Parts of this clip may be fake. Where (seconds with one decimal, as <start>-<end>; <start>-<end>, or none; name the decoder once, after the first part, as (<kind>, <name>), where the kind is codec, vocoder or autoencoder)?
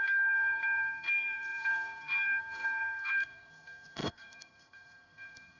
0.0-5.6 (codec, SNAC)